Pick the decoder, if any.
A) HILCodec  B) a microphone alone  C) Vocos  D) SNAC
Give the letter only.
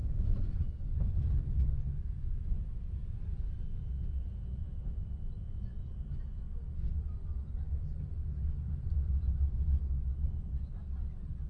B